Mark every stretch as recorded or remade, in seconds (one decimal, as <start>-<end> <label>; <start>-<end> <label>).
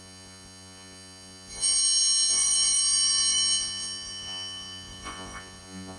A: 0.0-6.0 remade